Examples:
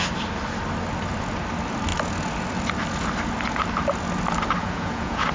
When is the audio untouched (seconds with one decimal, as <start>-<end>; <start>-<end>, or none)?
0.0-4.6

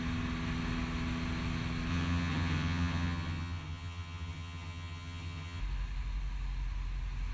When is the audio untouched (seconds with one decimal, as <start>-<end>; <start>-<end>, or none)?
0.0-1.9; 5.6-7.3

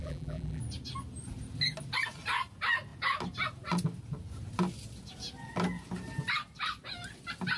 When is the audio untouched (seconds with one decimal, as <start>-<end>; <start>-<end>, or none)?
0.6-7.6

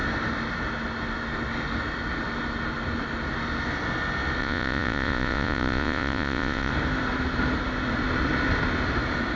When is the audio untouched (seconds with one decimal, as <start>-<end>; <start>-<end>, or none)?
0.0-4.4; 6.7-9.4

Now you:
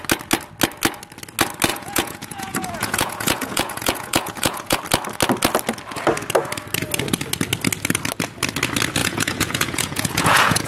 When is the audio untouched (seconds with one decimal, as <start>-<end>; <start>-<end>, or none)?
0.0-1.7; 4.8-9.0

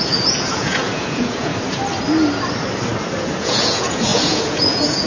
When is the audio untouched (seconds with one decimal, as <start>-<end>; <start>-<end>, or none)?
1.5-3.2